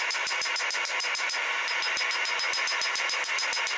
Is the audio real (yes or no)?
yes